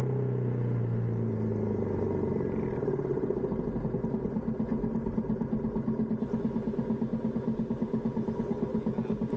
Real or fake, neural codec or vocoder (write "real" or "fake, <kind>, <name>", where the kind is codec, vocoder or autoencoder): real